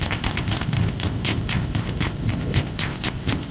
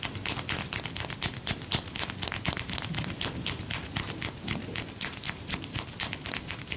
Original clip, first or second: second